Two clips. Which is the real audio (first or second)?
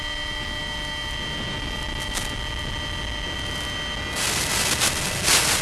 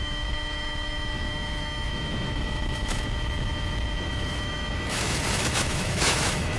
first